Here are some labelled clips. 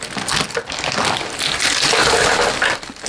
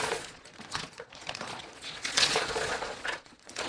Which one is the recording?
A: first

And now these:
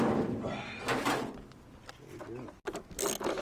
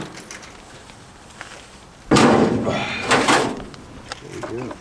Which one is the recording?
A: first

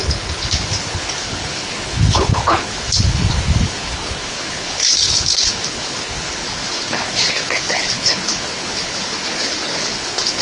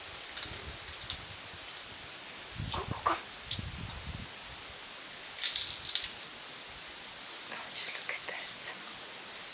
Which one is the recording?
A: second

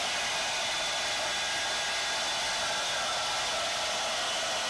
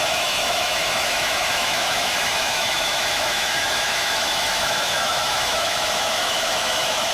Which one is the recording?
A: first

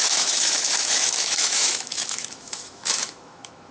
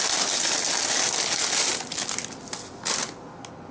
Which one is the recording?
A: second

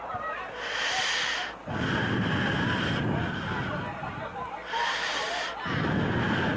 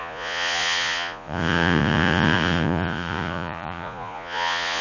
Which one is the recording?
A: first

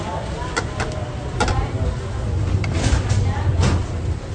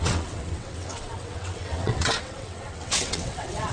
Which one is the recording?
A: first